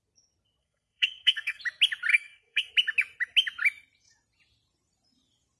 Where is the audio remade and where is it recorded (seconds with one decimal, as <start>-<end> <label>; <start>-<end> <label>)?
0.0-0.6 recorded; 0.6-1.6 remade; 1.6-2.1 recorded; 2.1-2.7 remade; 2.7-5.6 recorded